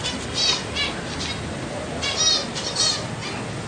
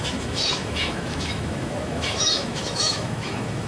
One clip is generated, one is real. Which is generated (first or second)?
second